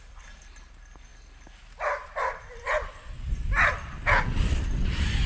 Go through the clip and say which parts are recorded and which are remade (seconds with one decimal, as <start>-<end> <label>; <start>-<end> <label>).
0.0-1.1 remade; 1.1-2.4 recorded; 2.4-2.8 remade; 2.8-3.3 recorded; 3.3-5.3 remade